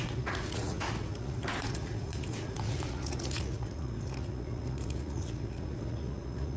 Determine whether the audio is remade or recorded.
remade